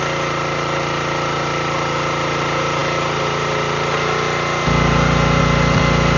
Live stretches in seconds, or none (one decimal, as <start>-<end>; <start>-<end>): 0.0-6.2